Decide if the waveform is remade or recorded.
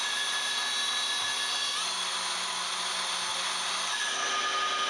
recorded